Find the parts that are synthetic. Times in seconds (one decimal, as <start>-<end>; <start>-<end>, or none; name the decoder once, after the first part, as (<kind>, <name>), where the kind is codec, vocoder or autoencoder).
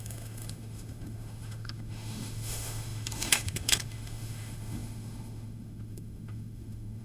0.0-7.0 (autoencoder, DAC-VAE)